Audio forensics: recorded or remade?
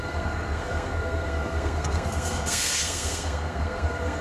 remade